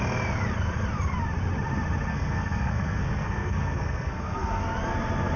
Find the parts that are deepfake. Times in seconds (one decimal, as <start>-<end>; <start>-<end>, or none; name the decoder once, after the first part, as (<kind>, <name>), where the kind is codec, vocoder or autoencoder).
2.1-4.6 (codec, SNAC)